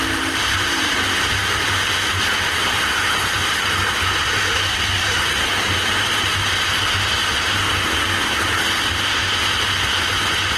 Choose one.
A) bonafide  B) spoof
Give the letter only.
A